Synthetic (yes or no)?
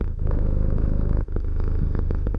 yes